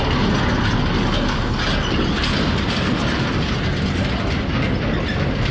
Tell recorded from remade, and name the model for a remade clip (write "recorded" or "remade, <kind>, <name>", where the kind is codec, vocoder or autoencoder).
recorded